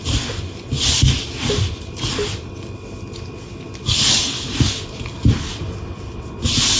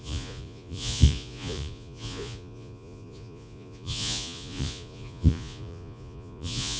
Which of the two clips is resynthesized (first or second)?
second